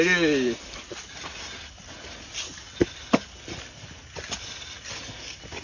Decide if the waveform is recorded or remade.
recorded